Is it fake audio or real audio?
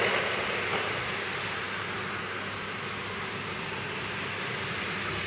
real